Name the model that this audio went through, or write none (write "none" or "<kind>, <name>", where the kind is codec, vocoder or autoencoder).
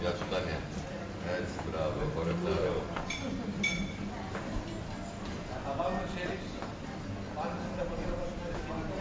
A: none